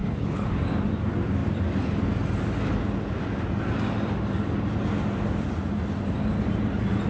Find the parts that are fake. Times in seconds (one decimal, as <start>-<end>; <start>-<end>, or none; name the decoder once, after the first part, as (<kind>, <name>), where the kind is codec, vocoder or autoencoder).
0.0-0.5 (codec, HILCodec)